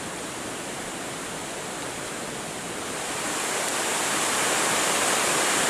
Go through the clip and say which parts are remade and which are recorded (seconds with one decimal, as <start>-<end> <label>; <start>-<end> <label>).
0.0-3.7 remade; 3.7-4.4 recorded; 4.4-5.7 remade